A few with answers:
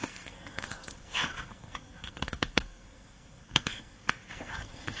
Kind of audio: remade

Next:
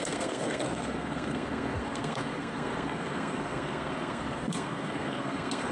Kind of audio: remade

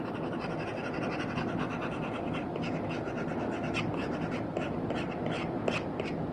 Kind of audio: recorded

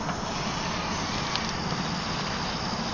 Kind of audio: recorded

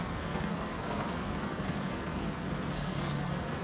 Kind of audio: remade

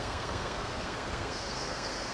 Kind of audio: remade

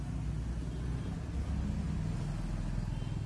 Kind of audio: recorded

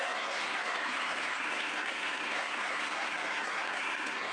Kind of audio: remade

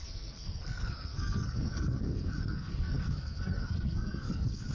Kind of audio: remade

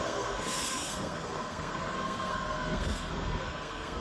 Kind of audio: remade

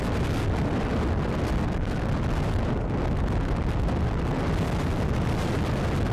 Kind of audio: recorded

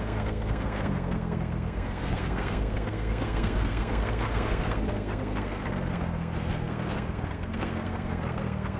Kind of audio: remade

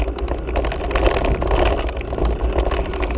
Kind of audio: recorded